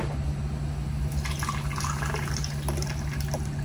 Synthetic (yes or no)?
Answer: no